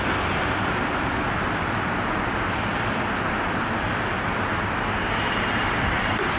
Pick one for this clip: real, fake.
real